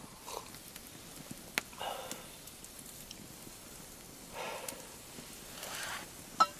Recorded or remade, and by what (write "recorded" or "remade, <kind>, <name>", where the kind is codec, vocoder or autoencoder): recorded